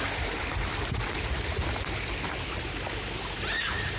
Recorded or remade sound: recorded